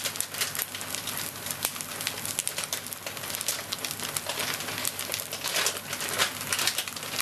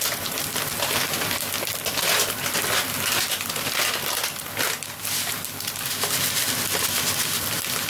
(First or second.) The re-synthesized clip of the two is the second